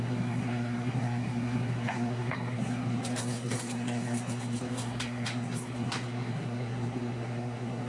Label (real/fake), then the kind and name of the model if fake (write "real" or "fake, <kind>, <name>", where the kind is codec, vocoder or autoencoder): fake, codec, SNAC